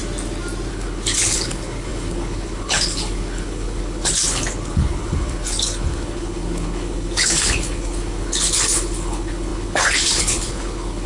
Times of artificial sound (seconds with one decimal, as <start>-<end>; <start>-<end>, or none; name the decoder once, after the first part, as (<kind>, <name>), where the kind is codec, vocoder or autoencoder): 0.7-11.1 (codec, HILCodec)